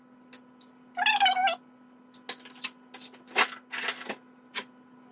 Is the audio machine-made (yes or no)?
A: no